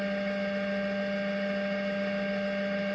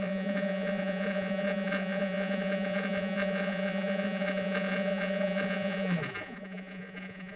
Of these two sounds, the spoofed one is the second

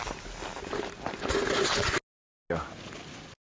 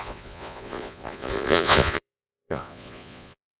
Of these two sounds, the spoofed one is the second